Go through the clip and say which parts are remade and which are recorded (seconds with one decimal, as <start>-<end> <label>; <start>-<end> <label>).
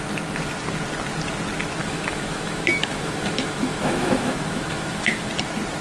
0.0-1.8 recorded; 1.8-5.3 remade; 5.3-5.8 recorded